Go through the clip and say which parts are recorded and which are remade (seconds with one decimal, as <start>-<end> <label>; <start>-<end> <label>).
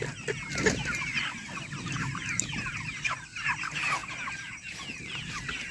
0.0-5.7 recorded